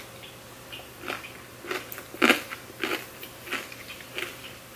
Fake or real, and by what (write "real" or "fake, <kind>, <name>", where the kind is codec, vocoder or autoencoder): real